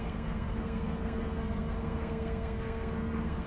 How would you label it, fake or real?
fake